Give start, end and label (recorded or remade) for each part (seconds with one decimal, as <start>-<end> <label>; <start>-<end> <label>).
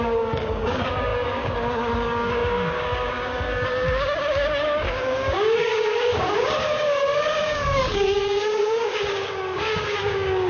0.0-10.5 remade